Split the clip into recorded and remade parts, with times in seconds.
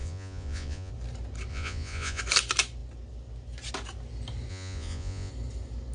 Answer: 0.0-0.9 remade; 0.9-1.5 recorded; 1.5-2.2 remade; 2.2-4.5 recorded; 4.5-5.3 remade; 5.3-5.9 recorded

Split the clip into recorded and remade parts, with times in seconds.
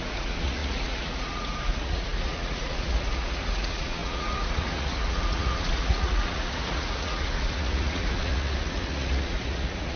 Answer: 0.0-10.0 remade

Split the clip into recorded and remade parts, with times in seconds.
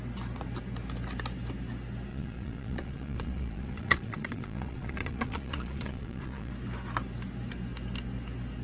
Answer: 0.0-2.1 recorded; 2.1-6.5 remade; 6.5-8.6 recorded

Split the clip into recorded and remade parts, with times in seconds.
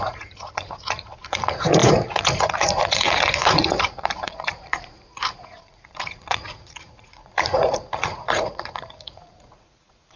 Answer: 0.0-10.2 remade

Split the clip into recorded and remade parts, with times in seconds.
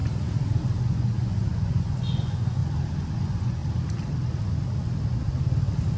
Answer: 0.0-0.8 recorded; 0.8-2.6 remade; 2.6-3.1 recorded; 3.1-3.6 remade; 3.6-6.0 recorded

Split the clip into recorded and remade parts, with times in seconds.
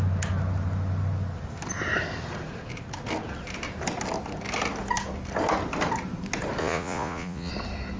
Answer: 0.0-6.6 recorded; 6.6-7.5 remade; 7.5-8.0 recorded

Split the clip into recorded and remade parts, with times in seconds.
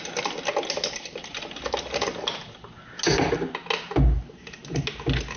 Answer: 0.0-5.4 recorded